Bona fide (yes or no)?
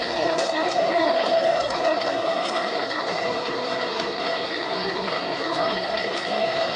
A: no